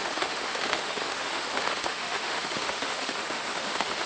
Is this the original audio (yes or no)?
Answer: no